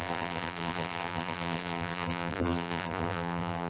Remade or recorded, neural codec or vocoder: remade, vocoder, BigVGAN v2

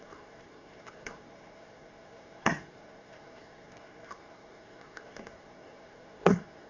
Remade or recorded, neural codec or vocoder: remade, codec, SNAC